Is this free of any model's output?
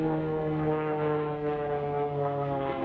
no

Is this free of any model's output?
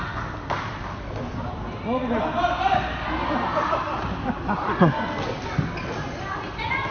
yes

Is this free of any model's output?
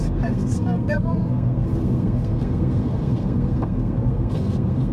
no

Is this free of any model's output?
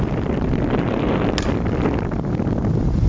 yes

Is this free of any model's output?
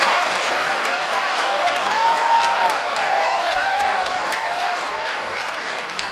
no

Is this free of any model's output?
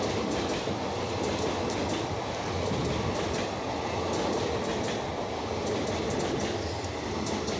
yes